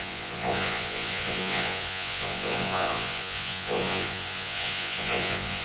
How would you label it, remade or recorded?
remade